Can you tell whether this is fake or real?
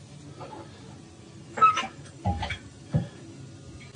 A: real